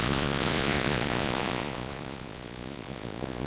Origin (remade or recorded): remade